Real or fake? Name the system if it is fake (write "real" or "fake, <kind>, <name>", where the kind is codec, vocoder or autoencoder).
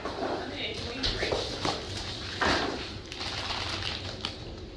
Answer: real